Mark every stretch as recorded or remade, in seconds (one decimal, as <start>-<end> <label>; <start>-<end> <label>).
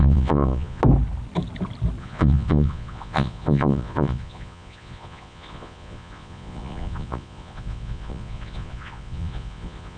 0.0-0.8 remade; 0.8-2.0 recorded; 2.0-10.0 remade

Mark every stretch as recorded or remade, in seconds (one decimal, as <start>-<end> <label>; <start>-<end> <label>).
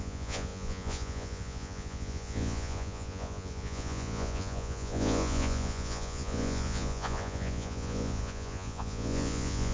0.0-9.7 remade